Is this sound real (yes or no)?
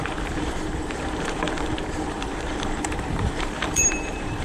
no